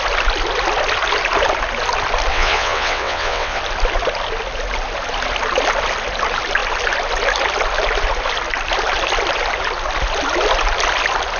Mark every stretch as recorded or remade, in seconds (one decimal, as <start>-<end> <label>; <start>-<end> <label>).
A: 0.0-2.3 recorded; 2.3-3.6 remade; 3.6-11.4 recorded